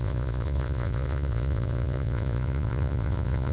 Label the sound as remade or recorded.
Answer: remade